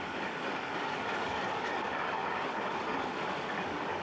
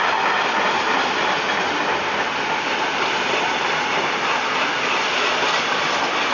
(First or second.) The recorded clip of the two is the second